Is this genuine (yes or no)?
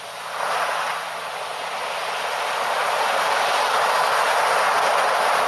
yes